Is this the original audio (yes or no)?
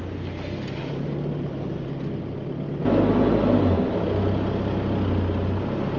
yes